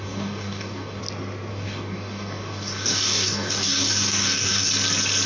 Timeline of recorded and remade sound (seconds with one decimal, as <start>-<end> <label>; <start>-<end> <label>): 0.0-1.0 remade; 1.0-1.5 recorded; 1.5-4.7 remade; 4.7-5.3 recorded